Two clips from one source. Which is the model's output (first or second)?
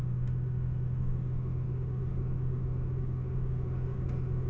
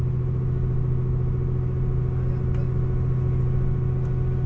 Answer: first